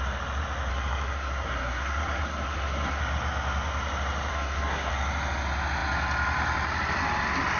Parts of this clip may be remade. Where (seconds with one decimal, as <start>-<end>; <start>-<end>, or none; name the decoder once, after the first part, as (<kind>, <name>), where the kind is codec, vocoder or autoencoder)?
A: 0.7-3.0 (codec, SNAC); 4.3-4.9